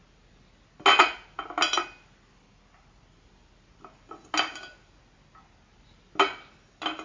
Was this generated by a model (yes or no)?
no